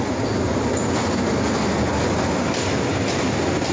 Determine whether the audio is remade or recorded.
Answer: recorded